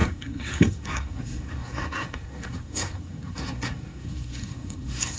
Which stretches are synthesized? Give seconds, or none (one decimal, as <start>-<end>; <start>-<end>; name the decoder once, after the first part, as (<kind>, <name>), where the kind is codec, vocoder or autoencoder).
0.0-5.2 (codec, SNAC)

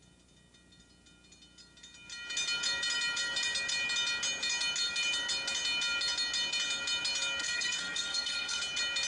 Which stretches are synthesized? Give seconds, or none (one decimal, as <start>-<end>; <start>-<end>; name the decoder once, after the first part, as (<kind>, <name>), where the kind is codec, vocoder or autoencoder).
7.4-8.6 (codec, SNAC)

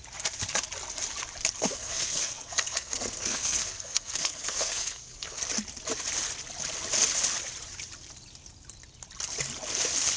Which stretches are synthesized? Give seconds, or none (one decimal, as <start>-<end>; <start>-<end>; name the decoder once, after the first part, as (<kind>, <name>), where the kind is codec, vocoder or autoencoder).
1.6-5.4 (codec, SNAC)